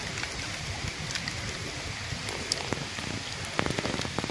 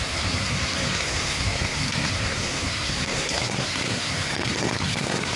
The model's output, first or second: second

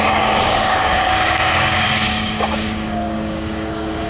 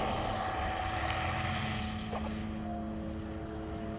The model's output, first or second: first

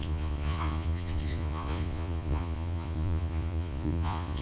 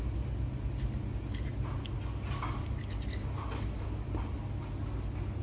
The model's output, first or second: first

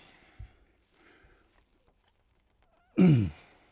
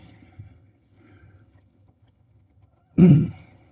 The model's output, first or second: second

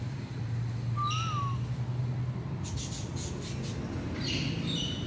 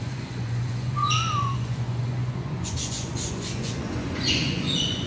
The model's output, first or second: second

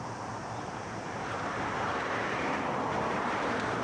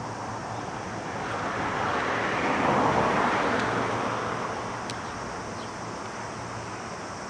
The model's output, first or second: first